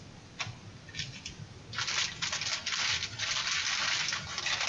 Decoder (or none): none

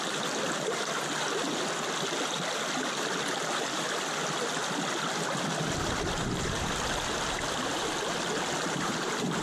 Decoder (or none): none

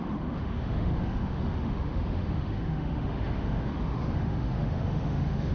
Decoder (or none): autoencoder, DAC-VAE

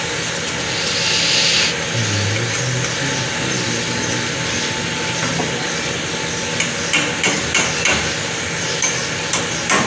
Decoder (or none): none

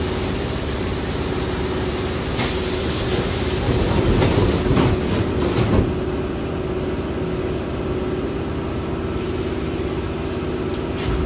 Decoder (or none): none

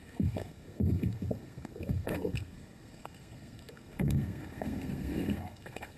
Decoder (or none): codec, SNAC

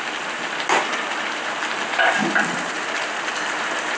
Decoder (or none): none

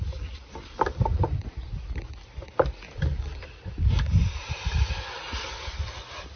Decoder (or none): none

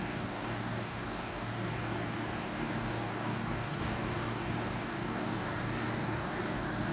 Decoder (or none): codec, DAC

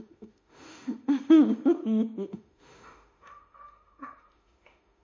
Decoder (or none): autoencoder, DAC-VAE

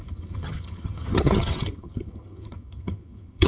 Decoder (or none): vocoder, HiFi-GAN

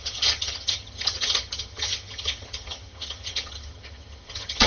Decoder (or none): vocoder, HiFi-GAN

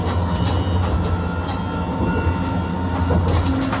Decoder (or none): none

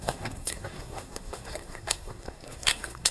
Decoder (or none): codec, SNAC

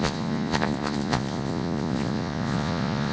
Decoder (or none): vocoder, Vocos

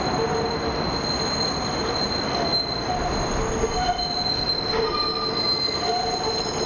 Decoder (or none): none